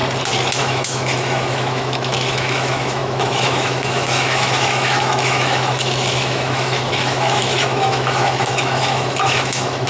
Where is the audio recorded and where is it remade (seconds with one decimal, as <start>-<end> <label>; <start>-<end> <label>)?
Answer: 0.0-0.6 recorded; 0.6-9.9 remade